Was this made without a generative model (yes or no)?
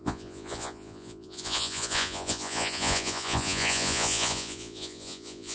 no